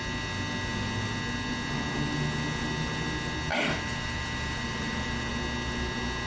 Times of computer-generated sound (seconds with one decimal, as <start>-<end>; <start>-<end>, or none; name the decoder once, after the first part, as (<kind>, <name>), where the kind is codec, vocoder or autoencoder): 3.5-5.3 (vocoder, BigVGAN v2)